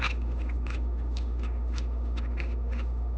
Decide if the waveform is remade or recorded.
remade